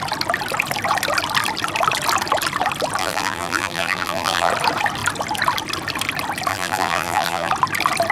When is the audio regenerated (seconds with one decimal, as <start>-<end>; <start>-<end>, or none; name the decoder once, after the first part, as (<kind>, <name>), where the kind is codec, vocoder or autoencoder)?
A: 3.0-4.5 (vocoder, BigVGAN v2); 6.5-7.5

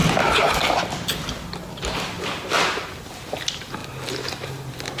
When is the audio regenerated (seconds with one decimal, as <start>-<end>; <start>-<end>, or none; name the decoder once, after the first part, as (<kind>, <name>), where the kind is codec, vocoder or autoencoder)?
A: 2.2-3.8 (vocoder, BigVGAN v2); 4.5-5.0

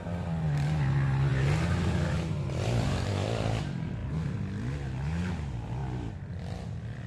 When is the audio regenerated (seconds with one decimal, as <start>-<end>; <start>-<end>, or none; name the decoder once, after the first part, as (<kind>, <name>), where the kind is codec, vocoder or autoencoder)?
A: none

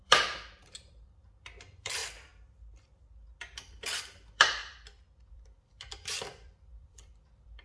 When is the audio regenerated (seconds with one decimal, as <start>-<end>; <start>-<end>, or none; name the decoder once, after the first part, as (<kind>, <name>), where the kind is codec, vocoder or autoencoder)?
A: 0.0-2.0 (vocoder, BigVGAN v2); 3.4-4.6; 5.3-7.6